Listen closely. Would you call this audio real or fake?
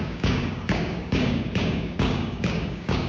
fake